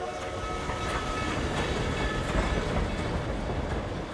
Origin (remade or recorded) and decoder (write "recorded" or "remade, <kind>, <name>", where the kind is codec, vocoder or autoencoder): recorded